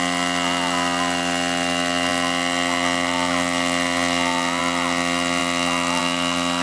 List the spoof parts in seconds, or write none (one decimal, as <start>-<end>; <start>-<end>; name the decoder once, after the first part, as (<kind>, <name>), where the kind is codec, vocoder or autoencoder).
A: none